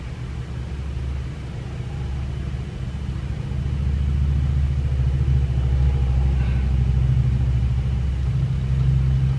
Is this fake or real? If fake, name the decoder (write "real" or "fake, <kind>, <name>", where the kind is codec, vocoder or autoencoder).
real